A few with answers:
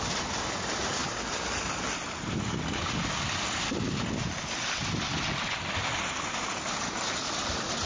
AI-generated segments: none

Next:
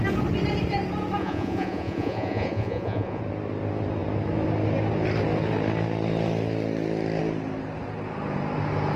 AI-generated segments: 1.2-3.2 (vocoder, Vocos)

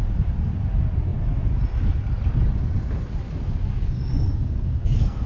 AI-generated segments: 3.7-5.3 (codec, SNAC)